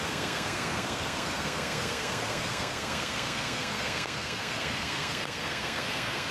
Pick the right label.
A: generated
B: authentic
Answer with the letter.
A